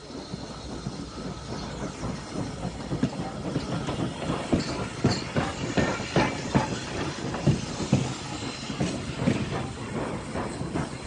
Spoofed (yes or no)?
no